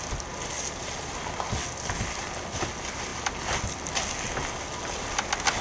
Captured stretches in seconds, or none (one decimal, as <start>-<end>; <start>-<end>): 0.0-5.6